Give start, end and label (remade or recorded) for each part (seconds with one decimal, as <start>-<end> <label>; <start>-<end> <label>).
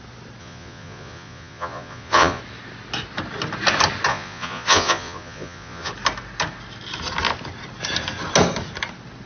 0.0-0.4 recorded; 0.4-2.4 remade; 2.4-4.1 recorded; 4.1-5.9 remade; 5.9-9.3 recorded